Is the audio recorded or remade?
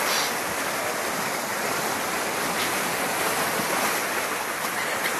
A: recorded